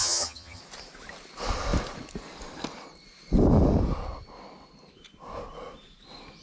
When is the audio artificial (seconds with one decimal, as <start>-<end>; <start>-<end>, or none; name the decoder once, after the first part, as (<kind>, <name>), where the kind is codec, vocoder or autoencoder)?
0.0-0.6 (vocoder, HiFi-GAN)